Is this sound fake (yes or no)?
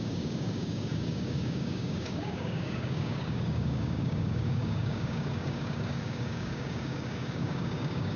yes